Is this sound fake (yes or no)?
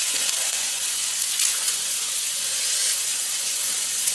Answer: yes